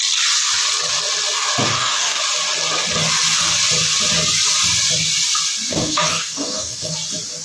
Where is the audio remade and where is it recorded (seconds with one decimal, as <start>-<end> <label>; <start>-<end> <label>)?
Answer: 0.0-1.7 recorded; 1.7-2.2 remade; 2.2-5.7 recorded; 5.7-6.9 remade; 6.9-7.4 recorded